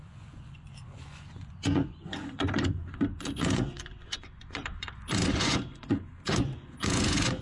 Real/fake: fake